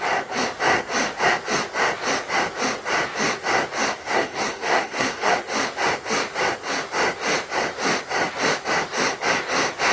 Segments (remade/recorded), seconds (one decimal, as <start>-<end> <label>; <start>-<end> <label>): 0.0-4.0 recorded; 4.0-5.3 remade; 5.3-9.9 recorded